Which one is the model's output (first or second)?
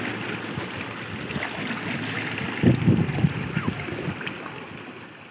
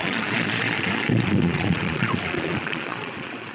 second